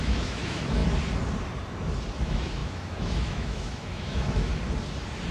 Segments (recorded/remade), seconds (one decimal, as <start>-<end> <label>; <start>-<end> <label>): 0.0-0.8 remade; 0.8-2.2 recorded; 2.2-4.5 remade; 4.5-5.3 recorded